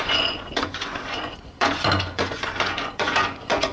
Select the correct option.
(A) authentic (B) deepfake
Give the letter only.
B